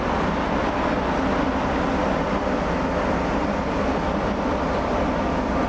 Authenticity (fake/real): real